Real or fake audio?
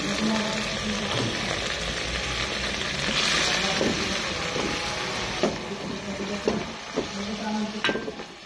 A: real